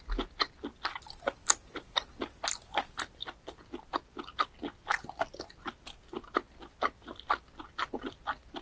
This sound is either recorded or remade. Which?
recorded